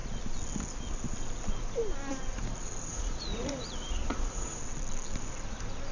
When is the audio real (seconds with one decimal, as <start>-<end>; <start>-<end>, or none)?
0.0-2.9; 4.6-5.9